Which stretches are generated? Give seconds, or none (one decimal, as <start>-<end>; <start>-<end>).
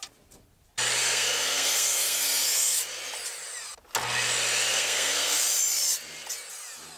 1.0-2.8; 4.7-5.4